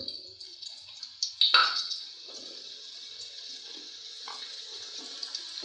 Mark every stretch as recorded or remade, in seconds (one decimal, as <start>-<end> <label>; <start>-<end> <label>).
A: 0.0-0.5 recorded; 0.5-1.0 remade; 1.0-1.6 recorded; 1.6-5.0 remade; 5.0-5.6 recorded